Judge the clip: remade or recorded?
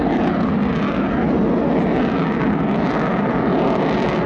recorded